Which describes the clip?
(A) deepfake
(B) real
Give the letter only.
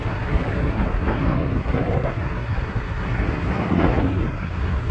A